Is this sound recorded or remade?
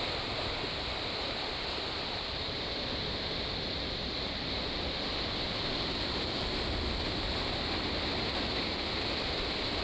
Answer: remade